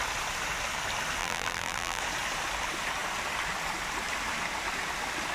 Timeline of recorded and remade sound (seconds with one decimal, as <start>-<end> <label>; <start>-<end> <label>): 0.0-1.2 recorded; 1.2-2.0 remade; 2.0-5.3 recorded